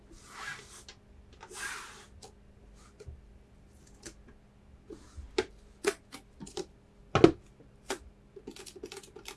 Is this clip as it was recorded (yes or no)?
yes